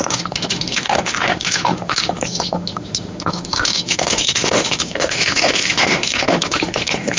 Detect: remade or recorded remade